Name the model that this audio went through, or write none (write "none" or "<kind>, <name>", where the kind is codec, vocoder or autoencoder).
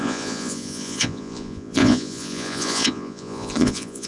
vocoder, Vocos